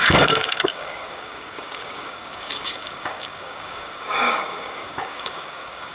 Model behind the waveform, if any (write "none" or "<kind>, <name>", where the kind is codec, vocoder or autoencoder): codec, DAC